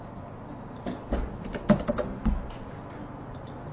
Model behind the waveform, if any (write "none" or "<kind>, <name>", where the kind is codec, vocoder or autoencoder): none